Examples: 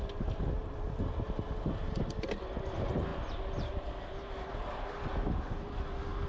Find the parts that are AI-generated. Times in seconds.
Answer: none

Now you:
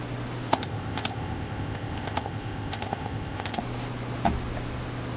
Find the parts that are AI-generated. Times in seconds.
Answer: 0.5-3.6 (codec, ZipCodec)

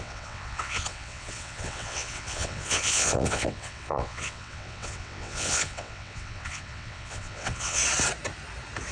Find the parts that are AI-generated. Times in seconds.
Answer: 0.0-7.8 (vocoder, WaveNeXt)

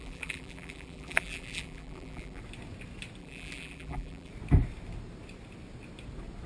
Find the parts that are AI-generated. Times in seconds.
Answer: 0.0-2.4 (vocoder, BigVGAN v2); 3.2-4.3

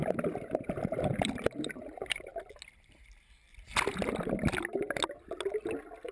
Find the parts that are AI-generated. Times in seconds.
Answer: 0.0-2.3 (vocoder, BigVGAN v2)